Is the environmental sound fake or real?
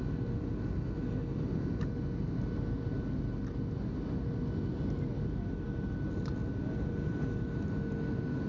real